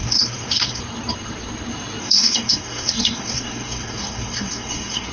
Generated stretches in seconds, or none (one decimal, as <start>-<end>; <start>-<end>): 0.0-0.8; 2.0-5.1